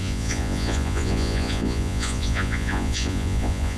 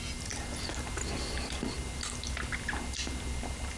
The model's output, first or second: first